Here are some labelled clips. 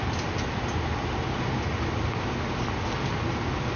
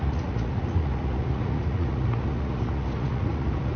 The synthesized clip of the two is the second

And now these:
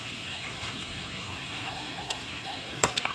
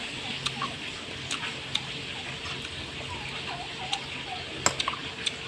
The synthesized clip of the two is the first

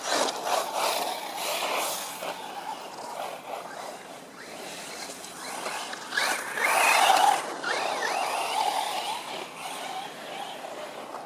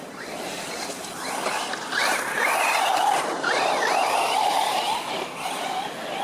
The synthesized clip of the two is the second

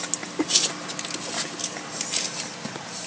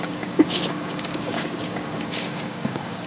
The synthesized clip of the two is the second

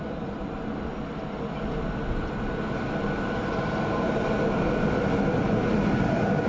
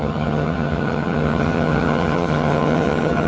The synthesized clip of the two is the second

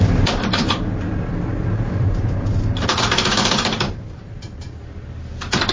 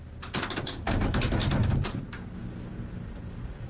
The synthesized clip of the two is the first